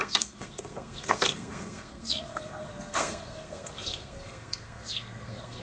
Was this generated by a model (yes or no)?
yes